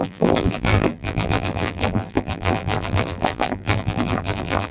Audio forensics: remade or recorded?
remade